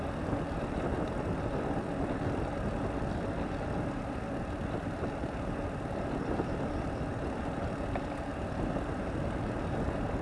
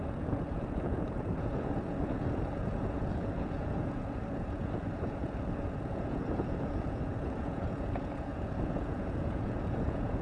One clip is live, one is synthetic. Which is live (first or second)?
first